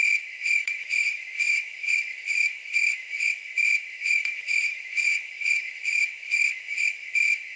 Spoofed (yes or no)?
yes